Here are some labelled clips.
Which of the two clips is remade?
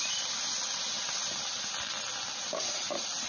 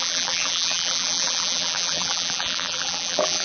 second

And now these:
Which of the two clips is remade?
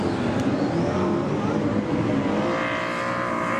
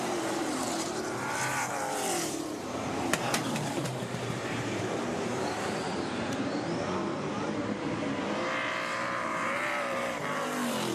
second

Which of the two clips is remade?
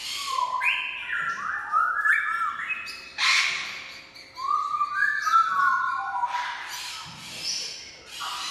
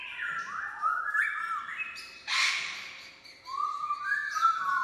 second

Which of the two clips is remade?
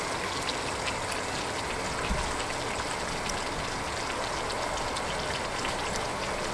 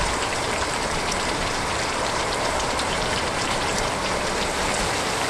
second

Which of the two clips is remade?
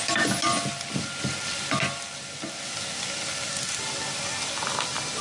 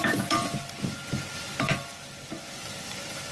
second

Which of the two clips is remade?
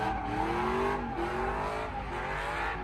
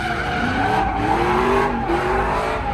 second